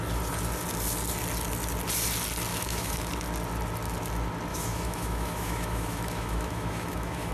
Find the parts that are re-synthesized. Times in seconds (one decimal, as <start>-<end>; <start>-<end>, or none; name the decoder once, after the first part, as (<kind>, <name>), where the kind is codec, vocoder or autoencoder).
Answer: 2.5-3.1 (autoencoder, DAC-VAE); 4.5-7.3